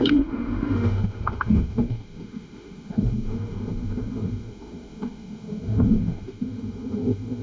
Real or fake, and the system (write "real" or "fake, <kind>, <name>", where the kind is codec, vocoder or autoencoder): fake, autoencoder, DAC-VAE